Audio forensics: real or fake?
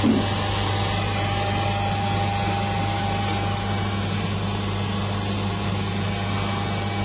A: real